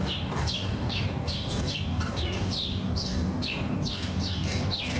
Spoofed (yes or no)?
yes